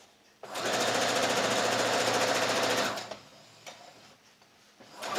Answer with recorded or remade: recorded